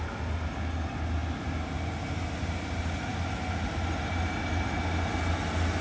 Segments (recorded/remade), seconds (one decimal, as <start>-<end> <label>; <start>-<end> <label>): 0.0-5.8 recorded